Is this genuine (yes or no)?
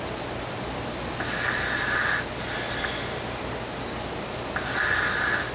yes